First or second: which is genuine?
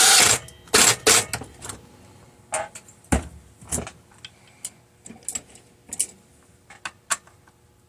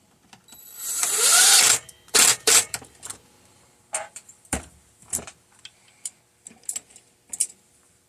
first